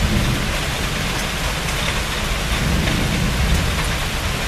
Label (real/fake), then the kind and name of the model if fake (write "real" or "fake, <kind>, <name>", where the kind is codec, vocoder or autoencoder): real